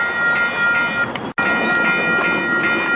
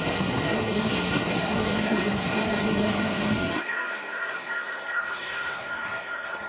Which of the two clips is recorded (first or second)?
first